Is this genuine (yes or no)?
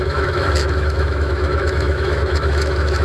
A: no